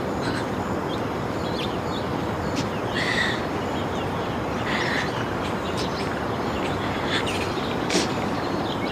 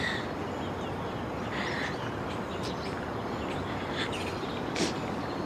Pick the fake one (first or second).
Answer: first